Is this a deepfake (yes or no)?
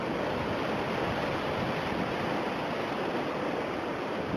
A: no